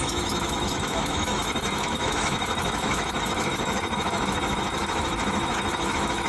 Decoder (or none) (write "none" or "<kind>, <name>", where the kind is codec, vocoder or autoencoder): autoencoder, DAC-VAE